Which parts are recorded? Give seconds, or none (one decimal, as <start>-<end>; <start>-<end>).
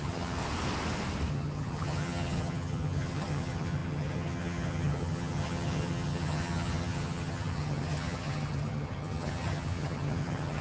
0.4-1.3